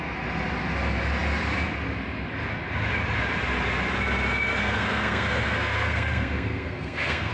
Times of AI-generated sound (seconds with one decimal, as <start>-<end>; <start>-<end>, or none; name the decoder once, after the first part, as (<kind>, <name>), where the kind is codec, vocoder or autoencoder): 4.6-7.3 (codec, SNAC)